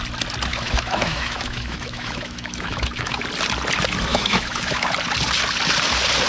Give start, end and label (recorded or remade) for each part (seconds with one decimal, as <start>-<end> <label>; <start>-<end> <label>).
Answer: 0.0-0.5 recorded; 0.5-3.2 remade; 3.2-4.1 recorded; 4.1-4.9 remade; 4.9-6.3 recorded